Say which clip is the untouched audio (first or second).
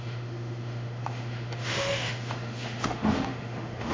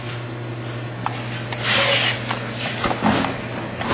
second